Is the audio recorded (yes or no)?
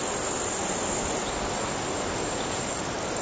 yes